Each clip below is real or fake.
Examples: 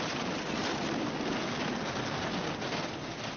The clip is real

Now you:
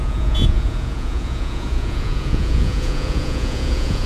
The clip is fake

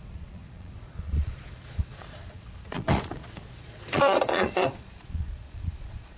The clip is fake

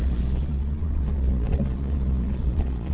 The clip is fake